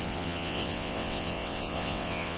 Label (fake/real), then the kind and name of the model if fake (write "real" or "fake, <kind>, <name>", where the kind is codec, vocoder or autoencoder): fake, vocoder, WaveNeXt